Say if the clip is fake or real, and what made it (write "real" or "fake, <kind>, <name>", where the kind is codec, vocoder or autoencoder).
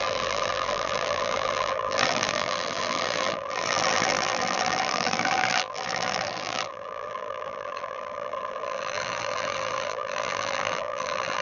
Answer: fake, vocoder, BigVGAN v2